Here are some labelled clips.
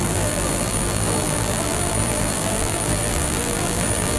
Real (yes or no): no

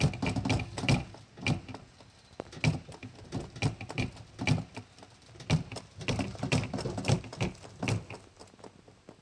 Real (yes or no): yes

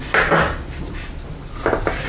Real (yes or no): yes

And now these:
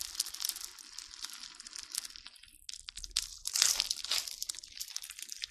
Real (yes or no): yes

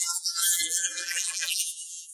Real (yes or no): no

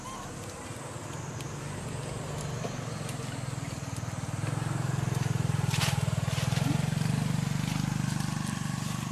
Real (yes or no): yes